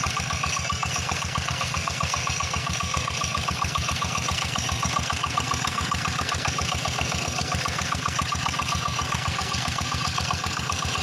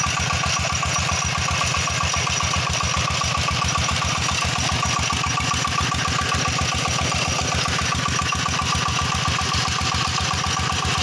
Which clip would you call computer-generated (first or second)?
first